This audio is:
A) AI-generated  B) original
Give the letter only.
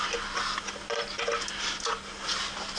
B